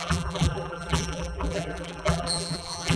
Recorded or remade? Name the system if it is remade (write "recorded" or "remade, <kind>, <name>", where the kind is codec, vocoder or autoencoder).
remade, vocoder, BigVGAN v2